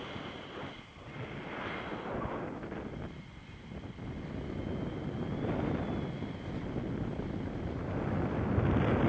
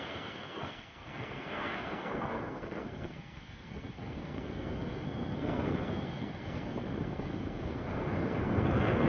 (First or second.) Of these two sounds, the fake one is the second